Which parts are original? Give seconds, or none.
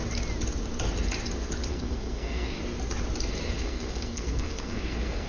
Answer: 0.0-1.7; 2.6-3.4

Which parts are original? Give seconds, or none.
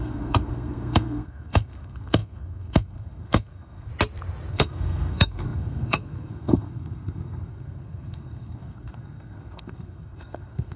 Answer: 3.9-4.5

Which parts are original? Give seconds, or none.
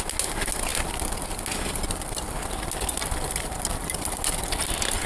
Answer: 0.0-5.1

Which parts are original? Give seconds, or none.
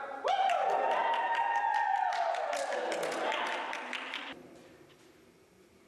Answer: 0.0-5.9